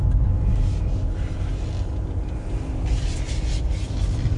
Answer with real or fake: real